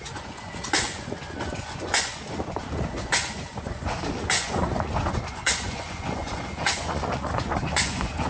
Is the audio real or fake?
fake